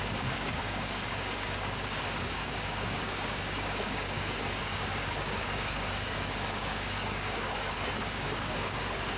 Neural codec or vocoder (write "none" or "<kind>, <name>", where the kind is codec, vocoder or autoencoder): codec, DAC